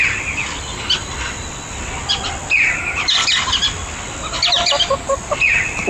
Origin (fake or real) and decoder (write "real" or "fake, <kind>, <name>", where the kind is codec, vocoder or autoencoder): real